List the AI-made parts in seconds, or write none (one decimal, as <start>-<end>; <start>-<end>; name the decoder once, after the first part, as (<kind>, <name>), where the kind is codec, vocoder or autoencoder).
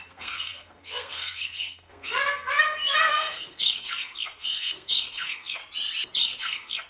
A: 0.0-5.6 (codec, SNAC); 6.4-6.9